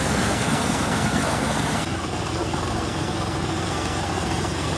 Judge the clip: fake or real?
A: fake